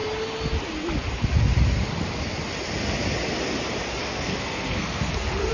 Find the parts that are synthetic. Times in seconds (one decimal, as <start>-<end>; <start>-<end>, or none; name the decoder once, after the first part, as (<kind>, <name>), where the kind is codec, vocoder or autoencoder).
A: 4.0-5.5 (codec, SNAC)